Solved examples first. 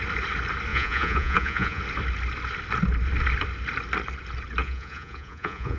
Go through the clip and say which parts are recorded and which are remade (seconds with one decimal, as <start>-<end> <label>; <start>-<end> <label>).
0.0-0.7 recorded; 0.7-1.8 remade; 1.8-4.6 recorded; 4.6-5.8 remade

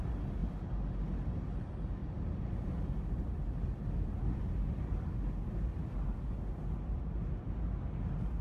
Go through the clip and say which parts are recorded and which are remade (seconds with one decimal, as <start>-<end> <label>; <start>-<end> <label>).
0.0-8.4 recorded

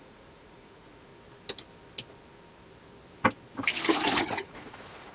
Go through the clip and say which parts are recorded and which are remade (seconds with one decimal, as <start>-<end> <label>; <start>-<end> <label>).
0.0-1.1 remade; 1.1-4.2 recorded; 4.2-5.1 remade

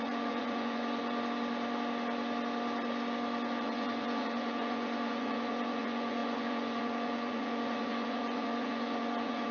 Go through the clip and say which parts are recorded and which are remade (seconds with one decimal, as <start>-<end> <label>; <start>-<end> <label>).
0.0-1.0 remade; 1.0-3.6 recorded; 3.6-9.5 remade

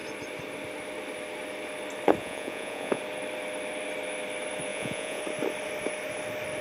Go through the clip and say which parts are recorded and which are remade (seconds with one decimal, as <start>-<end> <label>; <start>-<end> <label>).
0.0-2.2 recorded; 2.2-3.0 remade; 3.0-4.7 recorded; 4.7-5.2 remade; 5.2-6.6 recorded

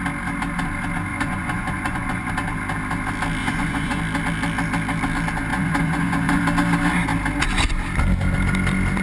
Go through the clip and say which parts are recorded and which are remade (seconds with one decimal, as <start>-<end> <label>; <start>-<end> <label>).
0.0-1.1 recorded; 1.1-2.3 remade; 2.3-3.4 recorded; 3.4-4.0 remade; 4.0-5.5 recorded; 5.5-6.4 remade; 6.4-9.0 recorded

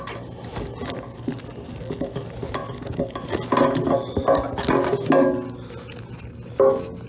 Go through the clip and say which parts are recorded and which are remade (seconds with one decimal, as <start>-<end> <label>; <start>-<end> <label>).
0.0-7.1 recorded

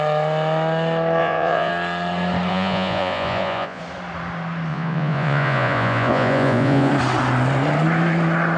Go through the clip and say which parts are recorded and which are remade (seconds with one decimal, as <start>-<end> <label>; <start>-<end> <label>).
0.0-1.2 recorded; 1.2-1.7 remade; 1.7-2.5 recorded; 2.5-3.8 remade; 3.8-4.7 recorded; 4.7-6.9 remade; 6.9-8.6 recorded